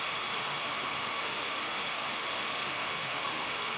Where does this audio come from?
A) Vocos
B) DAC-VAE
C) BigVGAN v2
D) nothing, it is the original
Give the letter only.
B